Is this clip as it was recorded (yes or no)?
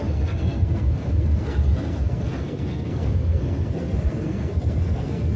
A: no